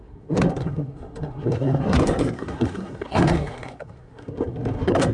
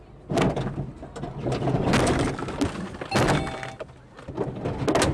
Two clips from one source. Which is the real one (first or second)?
second